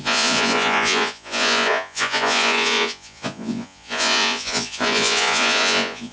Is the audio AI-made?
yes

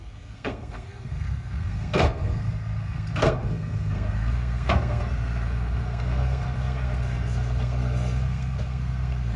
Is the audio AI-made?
yes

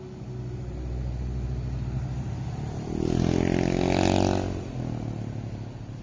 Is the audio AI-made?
no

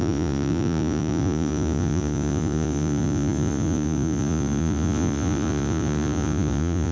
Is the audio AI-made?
yes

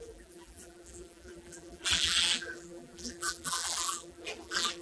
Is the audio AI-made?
yes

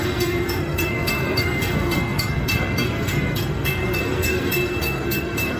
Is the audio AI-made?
yes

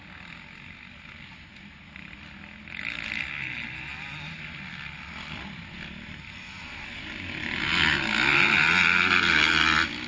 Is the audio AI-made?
no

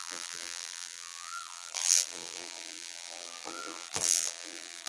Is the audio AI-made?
yes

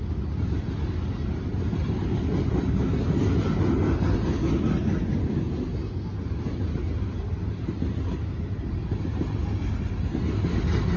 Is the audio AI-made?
no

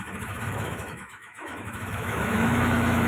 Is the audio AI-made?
yes